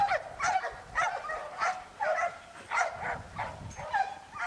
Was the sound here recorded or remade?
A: recorded